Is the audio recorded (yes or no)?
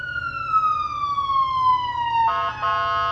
yes